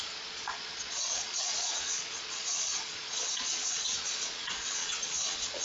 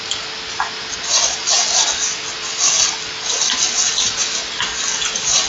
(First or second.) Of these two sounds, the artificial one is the first